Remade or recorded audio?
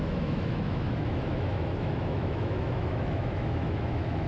remade